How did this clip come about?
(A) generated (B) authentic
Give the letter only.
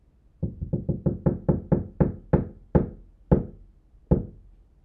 B